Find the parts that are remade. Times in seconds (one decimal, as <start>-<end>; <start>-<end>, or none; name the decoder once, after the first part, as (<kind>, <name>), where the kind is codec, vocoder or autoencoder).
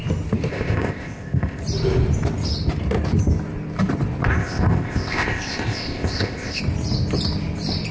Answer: 0.5-1.6 (codec, ZipCodec); 4.3-6.6